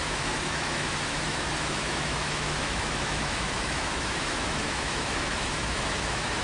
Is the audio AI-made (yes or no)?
yes